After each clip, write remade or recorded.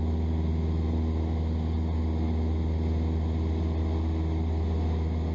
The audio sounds recorded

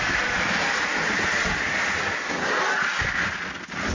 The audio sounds recorded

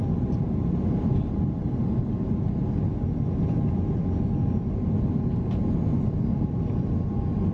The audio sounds recorded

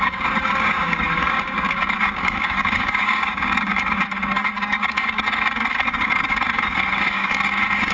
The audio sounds remade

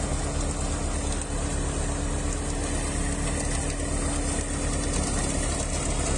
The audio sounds recorded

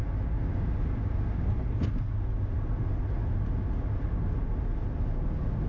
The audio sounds recorded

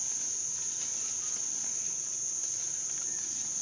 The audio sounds recorded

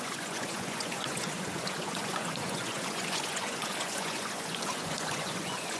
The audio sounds remade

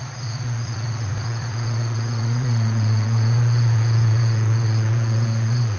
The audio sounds remade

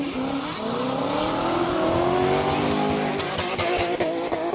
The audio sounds recorded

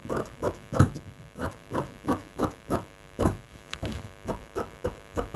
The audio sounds remade